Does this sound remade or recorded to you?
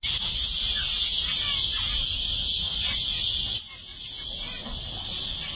recorded